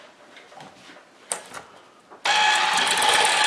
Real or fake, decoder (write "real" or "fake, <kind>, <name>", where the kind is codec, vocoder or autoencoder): real